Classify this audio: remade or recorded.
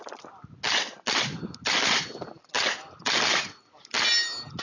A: recorded